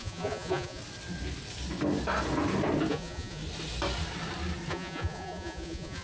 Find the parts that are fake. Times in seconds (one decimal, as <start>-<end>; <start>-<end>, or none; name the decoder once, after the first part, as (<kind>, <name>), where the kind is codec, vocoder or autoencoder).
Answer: 0.0-0.8 (vocoder, Vocos); 2.9-3.4; 4.7-6.0

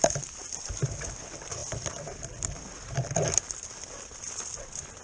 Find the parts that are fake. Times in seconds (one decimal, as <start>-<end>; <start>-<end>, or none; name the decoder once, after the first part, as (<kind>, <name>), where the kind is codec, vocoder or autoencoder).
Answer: none

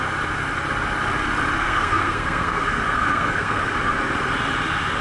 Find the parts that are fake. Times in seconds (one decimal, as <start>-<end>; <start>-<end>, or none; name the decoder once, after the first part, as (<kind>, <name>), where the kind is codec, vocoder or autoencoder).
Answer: 1.6-3.8 (codec, SNAC)

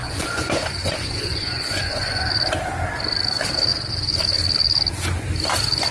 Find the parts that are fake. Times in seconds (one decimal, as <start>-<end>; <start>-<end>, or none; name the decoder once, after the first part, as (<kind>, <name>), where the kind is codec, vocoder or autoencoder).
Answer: 0.0-2.3 (vocoder, Vocos)

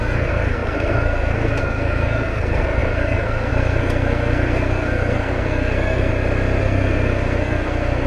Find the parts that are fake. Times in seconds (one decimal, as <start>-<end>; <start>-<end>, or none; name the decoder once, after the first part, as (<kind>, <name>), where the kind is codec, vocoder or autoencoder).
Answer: 0.0-6.1 (codec, SNAC); 6.6-8.1

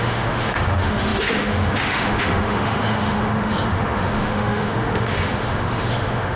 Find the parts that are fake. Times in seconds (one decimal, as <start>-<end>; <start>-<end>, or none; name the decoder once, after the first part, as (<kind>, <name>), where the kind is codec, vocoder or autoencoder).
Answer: 0.0-6.4 (autoencoder, DAC-VAE)

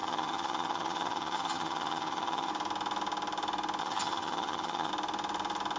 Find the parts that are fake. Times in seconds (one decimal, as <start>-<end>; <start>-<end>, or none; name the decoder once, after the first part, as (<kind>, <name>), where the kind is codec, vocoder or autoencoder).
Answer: 0.0-2.5 (vocoder, HiFi-GAN); 3.8-4.9